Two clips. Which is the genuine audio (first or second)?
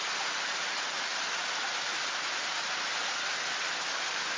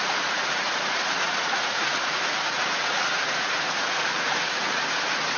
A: first